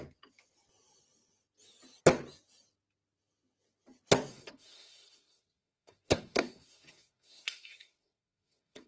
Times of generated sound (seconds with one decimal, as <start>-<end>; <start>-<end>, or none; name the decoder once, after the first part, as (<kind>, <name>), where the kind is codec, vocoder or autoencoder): 4.3-8.9 (codec, SNAC)